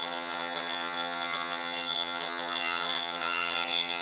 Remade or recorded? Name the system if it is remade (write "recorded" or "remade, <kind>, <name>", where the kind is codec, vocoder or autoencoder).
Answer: remade, vocoder, HiFi-GAN